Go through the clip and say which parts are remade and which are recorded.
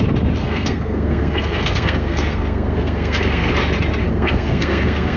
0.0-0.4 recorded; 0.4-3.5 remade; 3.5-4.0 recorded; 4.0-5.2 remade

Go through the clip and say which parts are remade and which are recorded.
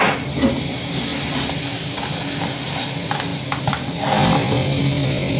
0.0-5.4 recorded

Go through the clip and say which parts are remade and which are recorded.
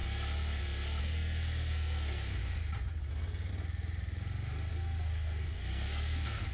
0.0-1.0 recorded; 1.0-2.4 remade; 2.4-2.9 recorded; 2.9-3.5 remade; 3.5-4.7 recorded; 4.7-6.5 remade